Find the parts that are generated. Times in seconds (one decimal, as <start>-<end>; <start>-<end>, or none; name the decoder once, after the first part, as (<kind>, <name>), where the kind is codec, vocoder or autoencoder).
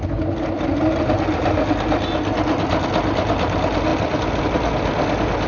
none